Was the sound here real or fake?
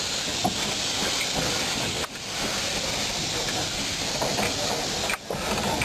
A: real